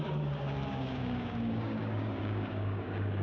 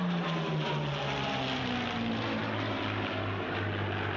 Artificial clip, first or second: first